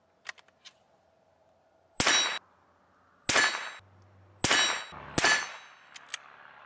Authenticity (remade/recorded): recorded